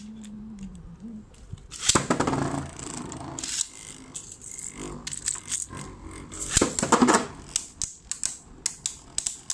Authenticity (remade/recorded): recorded